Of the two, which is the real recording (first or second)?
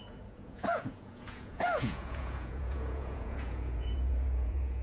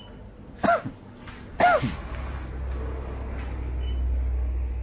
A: second